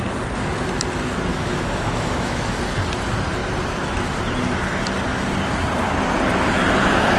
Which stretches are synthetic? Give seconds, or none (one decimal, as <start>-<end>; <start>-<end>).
1.3-2.6